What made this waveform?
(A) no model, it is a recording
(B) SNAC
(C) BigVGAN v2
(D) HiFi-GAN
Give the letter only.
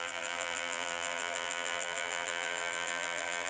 C